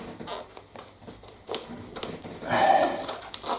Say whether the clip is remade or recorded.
recorded